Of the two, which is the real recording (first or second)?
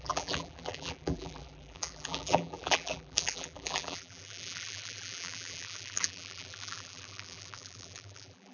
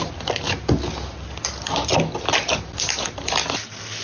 second